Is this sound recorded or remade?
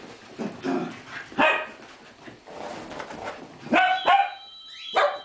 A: recorded